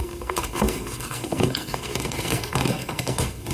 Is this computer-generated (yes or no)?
yes